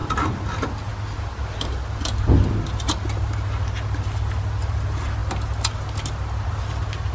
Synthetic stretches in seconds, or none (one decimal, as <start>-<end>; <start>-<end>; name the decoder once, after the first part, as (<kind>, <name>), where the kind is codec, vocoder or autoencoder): none